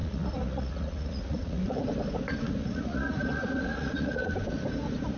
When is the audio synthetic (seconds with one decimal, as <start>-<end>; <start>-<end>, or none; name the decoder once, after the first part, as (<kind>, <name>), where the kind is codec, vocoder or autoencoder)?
0.0-1.8 (vocoder, Vocos); 2.6-4.3

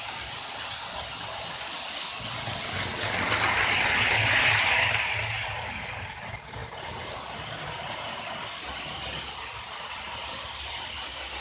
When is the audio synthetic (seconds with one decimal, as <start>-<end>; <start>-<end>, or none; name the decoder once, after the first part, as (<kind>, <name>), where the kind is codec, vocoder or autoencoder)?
none